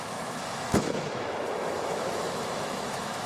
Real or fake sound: fake